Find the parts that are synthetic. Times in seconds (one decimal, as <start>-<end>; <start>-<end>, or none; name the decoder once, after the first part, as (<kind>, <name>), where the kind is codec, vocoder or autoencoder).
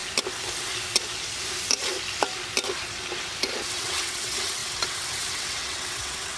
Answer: 3.7-6.4 (vocoder, WaveNeXt)